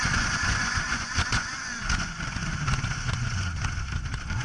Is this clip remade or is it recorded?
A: remade